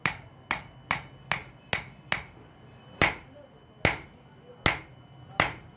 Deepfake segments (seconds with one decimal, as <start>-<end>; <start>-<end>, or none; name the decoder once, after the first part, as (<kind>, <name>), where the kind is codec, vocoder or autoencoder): none